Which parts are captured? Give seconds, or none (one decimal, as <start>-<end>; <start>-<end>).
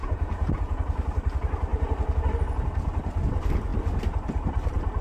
0.8-5.0